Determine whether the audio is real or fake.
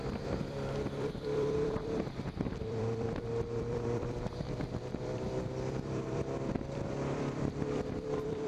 fake